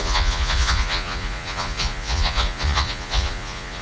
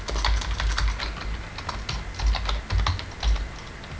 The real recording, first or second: second